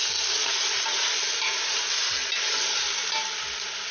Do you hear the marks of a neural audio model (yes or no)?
no